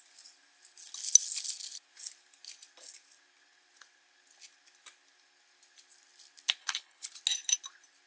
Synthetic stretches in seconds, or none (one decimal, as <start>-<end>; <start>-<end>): 6.6-7.1

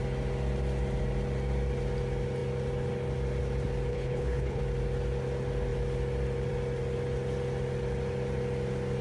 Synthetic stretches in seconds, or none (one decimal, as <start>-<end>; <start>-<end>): 3.9-4.6

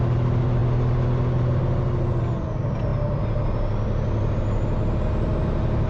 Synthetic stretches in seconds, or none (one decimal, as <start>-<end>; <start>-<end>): none

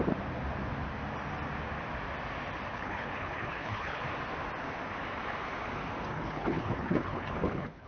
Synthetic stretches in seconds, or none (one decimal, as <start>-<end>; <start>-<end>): 2.7-4.0; 6.1-7.9

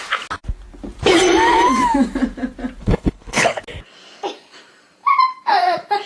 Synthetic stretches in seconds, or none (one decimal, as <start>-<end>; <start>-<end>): 2.8-3.6

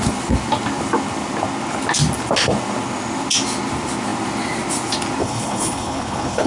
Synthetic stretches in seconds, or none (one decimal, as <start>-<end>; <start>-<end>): 5.2-6.5

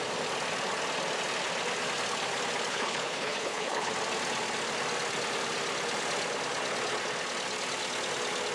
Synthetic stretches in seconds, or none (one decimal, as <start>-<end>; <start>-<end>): 2.7-3.9

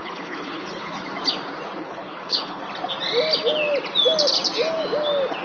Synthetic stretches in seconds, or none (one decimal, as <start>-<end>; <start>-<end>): 0.0-1.0; 1.8-2.6